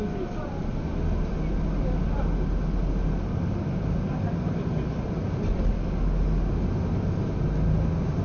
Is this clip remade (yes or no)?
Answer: no